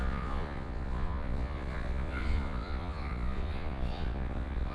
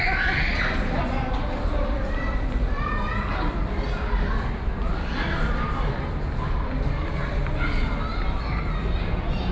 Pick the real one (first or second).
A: second